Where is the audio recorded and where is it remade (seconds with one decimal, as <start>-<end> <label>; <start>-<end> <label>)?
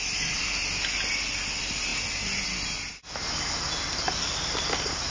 0.0-5.1 recorded